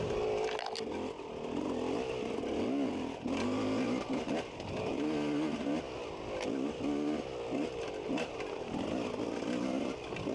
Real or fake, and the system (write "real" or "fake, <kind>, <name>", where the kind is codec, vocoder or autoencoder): real